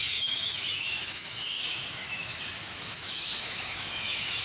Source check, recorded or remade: remade